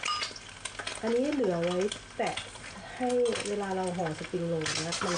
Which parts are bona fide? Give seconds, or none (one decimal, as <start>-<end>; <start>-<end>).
0.0-5.2